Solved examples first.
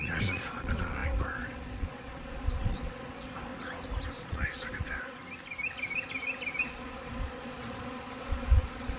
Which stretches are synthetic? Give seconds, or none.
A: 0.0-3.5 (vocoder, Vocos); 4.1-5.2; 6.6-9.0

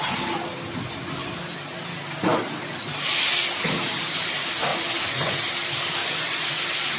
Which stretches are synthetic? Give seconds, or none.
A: 4.7-5.4 (vocoder, Vocos); 6.0-6.6

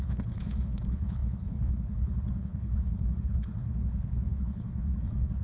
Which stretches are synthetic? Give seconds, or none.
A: 0.0-5.4 (codec, HILCodec)

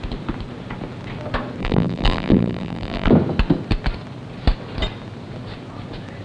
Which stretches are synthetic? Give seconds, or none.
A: 1.6-3.1 (vocoder, BigVGAN v2)